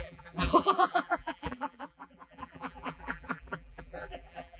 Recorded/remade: remade